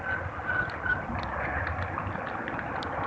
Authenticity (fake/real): real